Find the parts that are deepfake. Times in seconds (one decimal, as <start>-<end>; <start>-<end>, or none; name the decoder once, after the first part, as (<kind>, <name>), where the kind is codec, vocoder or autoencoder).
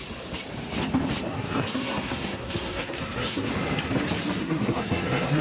1.3-3.5 (codec, SNAC); 4.4-5.4